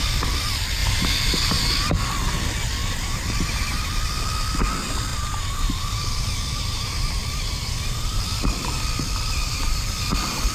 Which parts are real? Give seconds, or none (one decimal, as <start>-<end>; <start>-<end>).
0.0-0.8; 1.9-2.8; 3.8-5.1; 8.2-9.4; 10.0-10.5